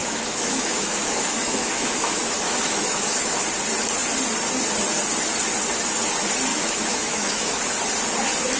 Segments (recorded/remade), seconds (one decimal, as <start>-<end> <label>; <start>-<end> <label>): 0.0-3.4 remade; 3.4-6.5 recorded; 6.5-7.6 remade; 7.6-8.6 recorded